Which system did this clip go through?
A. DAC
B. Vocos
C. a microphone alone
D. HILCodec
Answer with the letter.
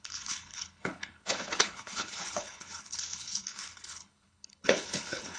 D